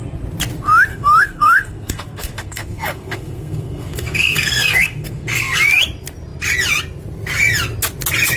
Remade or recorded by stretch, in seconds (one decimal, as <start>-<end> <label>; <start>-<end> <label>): 0.0-0.9 recorded; 0.9-5.6 remade; 5.6-8.4 recorded